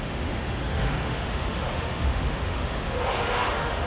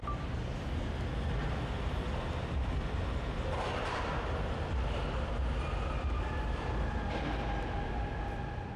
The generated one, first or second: first